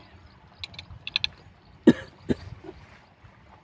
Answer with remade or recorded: recorded